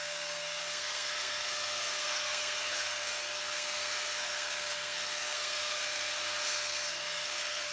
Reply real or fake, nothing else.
fake